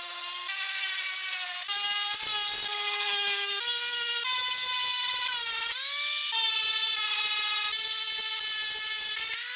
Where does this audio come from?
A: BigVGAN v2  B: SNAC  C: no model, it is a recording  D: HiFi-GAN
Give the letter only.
C